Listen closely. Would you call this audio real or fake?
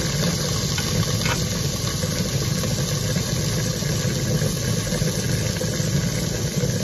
real